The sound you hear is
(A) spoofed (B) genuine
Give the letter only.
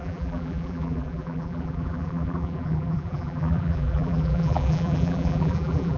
A